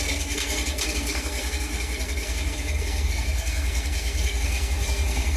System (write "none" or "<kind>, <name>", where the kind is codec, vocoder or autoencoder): codec, SNAC